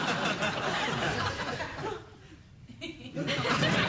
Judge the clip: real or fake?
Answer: fake